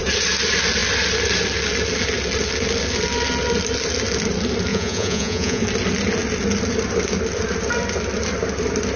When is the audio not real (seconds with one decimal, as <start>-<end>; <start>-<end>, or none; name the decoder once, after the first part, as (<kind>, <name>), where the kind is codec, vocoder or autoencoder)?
4.7-5.6 (vocoder, Vocos)